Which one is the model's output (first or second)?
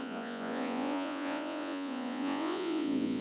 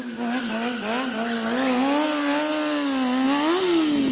first